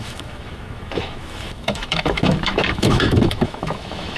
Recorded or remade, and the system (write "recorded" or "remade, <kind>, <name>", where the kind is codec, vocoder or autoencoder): remade, autoencoder, DAC-VAE